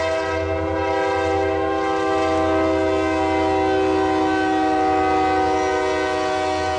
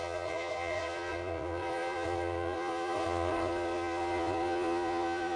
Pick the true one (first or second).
first